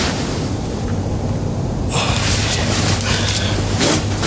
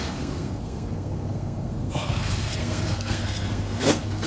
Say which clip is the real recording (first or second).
first